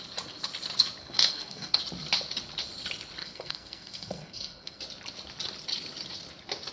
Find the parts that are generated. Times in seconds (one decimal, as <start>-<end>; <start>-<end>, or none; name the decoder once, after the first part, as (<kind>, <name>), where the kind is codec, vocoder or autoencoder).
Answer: 1.0-1.8 (codec, SNAC); 3.2-4.8